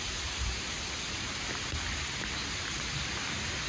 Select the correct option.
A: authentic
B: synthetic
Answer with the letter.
A